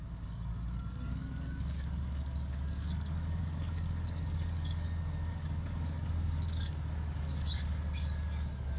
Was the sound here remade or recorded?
remade